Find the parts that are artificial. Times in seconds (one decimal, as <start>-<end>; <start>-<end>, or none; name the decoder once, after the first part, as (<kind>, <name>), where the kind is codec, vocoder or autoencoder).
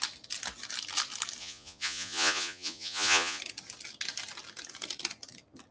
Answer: 1.4-3.4 (vocoder, Vocos)